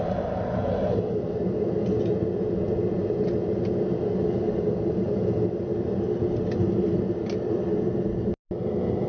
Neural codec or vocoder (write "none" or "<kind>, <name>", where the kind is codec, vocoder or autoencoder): none